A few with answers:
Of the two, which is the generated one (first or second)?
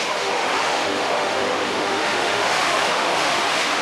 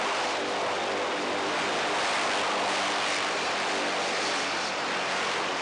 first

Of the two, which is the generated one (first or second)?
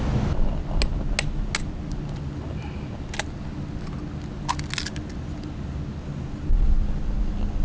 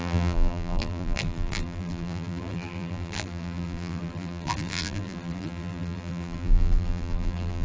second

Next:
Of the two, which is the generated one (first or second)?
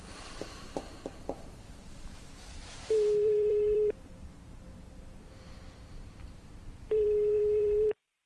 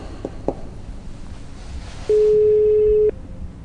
first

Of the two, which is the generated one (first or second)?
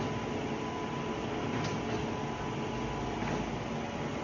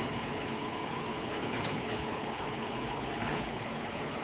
second